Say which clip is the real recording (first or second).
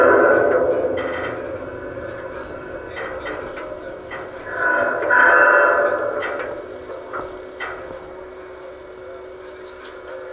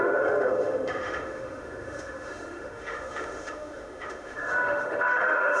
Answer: first